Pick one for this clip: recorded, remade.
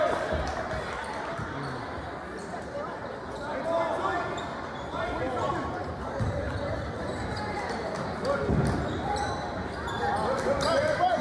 remade